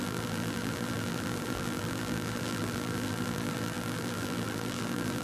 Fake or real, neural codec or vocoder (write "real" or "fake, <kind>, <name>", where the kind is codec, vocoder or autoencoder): fake, vocoder, BigVGAN v2